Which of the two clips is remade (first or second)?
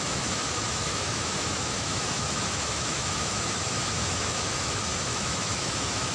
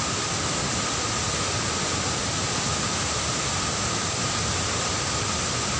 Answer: first